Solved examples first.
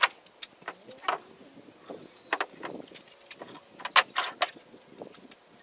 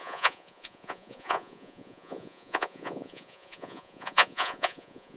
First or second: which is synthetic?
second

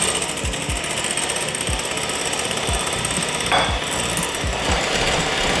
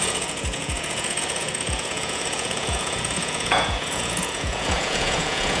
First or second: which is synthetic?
second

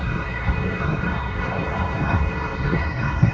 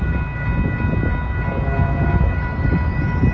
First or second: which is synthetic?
first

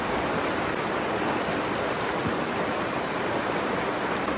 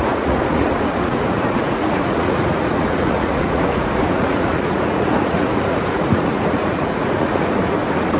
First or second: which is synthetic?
second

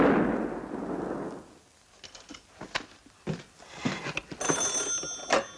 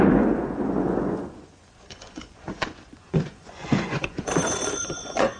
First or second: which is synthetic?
second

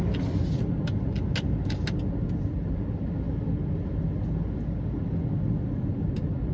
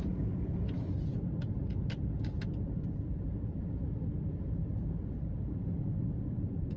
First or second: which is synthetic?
second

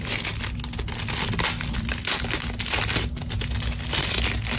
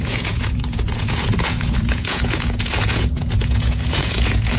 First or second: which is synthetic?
second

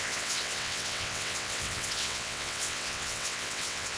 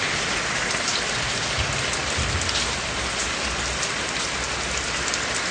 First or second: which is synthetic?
first